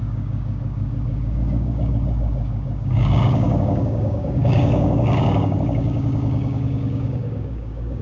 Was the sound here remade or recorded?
remade